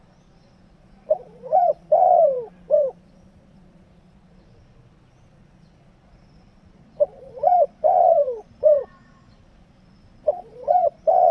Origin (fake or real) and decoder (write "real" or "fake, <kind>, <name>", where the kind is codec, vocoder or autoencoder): fake, vocoder, Vocos